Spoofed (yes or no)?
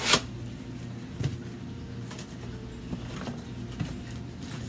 no